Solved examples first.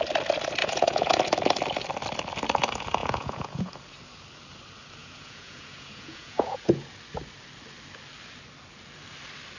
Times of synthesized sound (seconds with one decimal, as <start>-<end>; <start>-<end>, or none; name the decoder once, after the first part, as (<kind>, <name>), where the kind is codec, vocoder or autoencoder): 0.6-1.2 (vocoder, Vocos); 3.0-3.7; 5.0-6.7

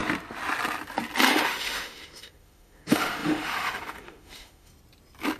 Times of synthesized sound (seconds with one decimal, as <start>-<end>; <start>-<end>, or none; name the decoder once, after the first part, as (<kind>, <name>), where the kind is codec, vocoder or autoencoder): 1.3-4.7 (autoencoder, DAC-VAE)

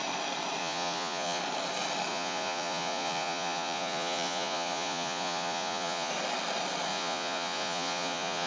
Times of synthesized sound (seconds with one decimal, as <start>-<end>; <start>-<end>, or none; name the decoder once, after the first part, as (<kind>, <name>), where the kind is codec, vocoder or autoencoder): 0.6-1.4 (vocoder, Vocos); 2.1-6.1; 6.9-8.5

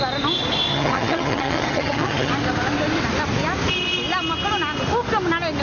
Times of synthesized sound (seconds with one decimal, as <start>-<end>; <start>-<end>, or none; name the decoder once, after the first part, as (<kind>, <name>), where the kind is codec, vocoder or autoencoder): 0.7-2.3 (vocoder, HiFi-GAN)

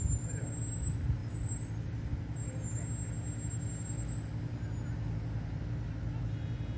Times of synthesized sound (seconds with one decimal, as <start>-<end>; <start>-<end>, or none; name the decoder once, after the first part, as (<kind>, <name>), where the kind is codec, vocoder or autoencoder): none